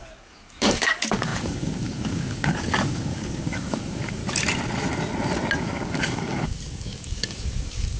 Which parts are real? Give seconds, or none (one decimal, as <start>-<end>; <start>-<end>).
4.2-5.6